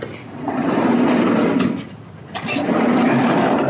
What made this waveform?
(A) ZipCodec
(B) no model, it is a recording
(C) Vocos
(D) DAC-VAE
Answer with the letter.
B